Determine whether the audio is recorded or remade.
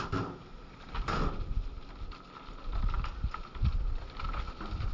recorded